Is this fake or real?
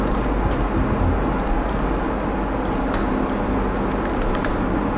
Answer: real